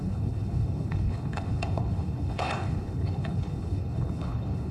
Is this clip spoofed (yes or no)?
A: yes